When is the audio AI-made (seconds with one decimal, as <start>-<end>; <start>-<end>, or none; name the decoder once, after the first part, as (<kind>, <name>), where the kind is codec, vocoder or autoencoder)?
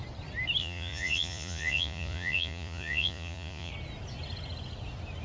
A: 0.6-3.7 (vocoder, Vocos)